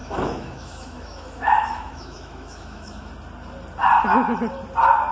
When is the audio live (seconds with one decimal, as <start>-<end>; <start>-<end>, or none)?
3.1-5.1